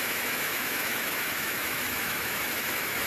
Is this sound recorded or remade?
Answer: remade